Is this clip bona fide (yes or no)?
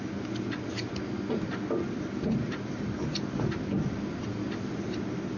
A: yes